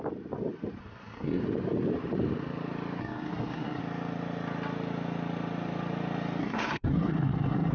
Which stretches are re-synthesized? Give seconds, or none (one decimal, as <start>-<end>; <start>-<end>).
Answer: 0.8-1.4; 3.0-3.8; 6.4-7.7